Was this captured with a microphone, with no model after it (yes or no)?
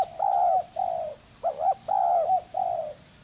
yes